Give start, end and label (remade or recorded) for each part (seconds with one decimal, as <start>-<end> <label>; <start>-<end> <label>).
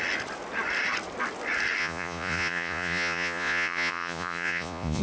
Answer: 0.0-1.8 recorded; 1.8-5.0 remade